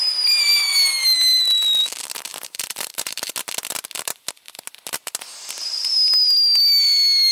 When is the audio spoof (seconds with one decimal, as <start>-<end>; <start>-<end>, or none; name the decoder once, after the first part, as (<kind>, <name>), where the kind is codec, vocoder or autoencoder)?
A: 2.3-3.3 (vocoder, BigVGAN v2)